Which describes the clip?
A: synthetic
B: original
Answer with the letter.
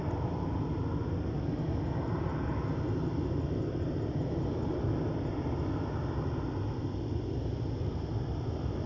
B